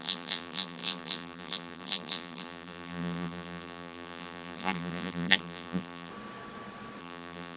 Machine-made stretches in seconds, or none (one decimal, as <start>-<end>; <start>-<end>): 0.0-6.1; 7.0-7.6